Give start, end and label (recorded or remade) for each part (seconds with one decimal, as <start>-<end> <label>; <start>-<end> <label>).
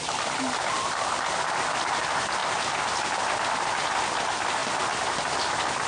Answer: 0.0-5.9 recorded